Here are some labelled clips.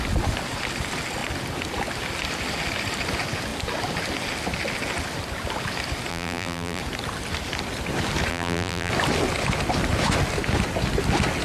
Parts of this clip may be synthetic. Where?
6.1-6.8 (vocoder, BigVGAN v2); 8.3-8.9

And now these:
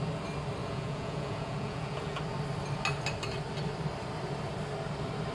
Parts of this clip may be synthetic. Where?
0.6-2.2 (vocoder, Vocos)

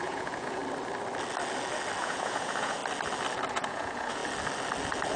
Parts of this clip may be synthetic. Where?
0.0-0.6 (vocoder, Vocos); 2.0-2.8; 3.5-4.2